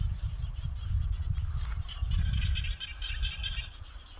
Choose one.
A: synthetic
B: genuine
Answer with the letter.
B